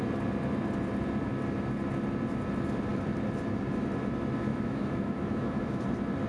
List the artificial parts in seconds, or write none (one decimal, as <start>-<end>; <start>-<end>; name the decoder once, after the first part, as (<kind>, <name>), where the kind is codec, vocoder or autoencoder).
4.5-5.8 (autoencoder, DAC-VAE)